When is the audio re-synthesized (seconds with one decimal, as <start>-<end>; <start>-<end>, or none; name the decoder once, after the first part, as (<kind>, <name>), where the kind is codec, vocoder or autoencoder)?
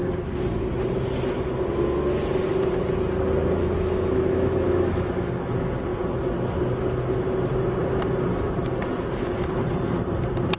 3.6-5.1 (autoencoder, DAC-VAE)